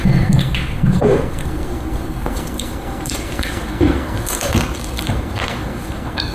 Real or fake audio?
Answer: fake